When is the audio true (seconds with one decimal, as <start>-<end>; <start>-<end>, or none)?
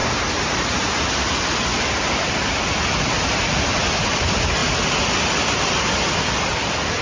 0.0-3.2; 4.6-6.3